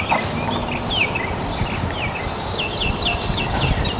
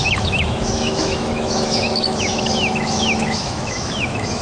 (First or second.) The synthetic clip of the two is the second